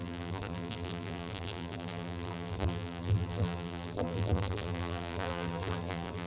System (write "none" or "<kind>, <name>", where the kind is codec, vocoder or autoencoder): vocoder, BigVGAN v2